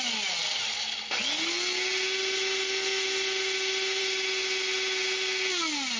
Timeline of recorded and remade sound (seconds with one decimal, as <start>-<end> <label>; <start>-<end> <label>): 0.0-6.0 recorded